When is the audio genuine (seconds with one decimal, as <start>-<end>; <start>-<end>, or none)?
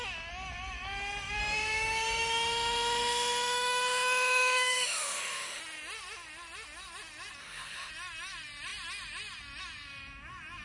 0.0-1.4; 5.6-7.4; 7.9-10.6